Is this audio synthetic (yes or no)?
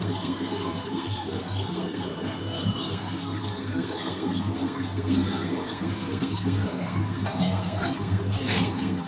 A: yes